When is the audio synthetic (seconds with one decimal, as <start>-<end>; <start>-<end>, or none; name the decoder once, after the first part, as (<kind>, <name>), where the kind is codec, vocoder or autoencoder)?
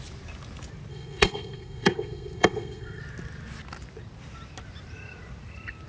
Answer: 0.9-3.0 (codec, SNAC)